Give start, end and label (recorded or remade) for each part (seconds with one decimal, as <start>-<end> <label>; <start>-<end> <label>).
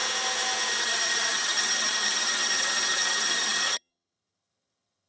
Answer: 0.0-0.8 recorded; 0.8-5.1 remade